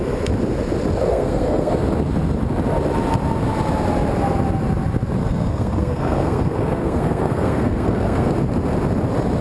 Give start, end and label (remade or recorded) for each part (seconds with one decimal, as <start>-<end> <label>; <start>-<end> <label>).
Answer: 0.0-1.1 recorded; 1.1-1.7 remade; 1.7-5.2 recorded; 5.2-8.3 remade; 8.3-9.4 recorded